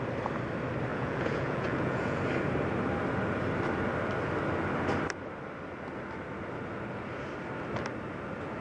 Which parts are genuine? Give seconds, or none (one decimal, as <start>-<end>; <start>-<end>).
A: 0.0-0.9; 2.2-8.6